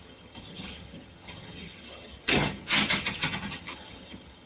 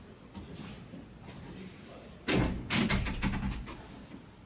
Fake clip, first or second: first